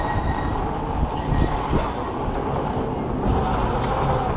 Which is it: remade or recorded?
recorded